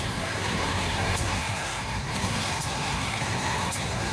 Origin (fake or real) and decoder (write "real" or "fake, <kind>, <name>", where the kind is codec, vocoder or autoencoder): fake, codec, SNAC